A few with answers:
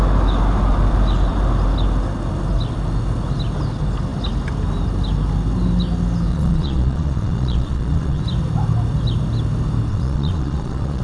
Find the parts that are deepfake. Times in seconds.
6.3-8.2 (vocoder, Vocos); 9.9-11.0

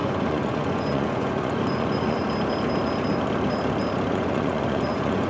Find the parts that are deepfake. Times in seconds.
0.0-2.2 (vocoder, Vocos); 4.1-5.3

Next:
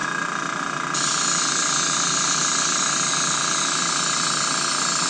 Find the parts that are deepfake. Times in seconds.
none